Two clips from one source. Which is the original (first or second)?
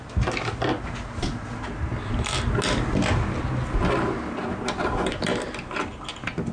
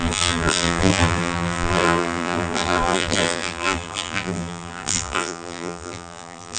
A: first